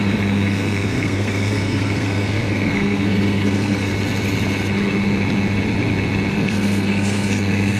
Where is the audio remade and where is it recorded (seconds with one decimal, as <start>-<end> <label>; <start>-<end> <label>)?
0.0-3.9 remade; 3.9-6.3 recorded; 6.3-7.8 remade

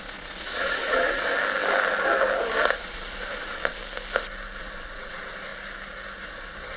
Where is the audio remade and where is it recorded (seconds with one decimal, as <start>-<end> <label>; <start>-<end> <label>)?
0.0-1.3 remade; 1.3-2.7 recorded; 2.7-3.8 remade; 3.8-4.6 recorded; 4.6-5.5 remade; 5.5-6.2 recorded; 6.2-6.8 remade

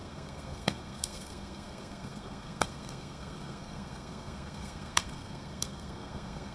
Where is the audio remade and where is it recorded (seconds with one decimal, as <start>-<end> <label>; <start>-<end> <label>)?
0.0-6.5 remade

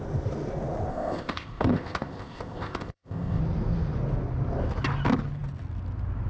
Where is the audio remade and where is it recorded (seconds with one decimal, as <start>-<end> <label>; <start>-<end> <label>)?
0.0-0.9 recorded; 0.9-3.4 remade; 3.4-6.3 recorded

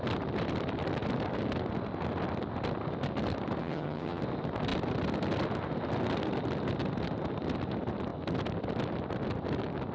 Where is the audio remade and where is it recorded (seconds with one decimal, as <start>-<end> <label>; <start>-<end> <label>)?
0.0-3.6 recorded; 3.6-4.2 remade; 4.2-9.9 recorded

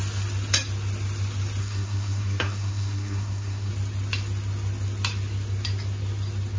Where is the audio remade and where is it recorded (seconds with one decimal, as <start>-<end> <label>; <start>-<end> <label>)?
0.0-1.6 recorded; 1.6-3.7 remade; 3.7-6.6 recorded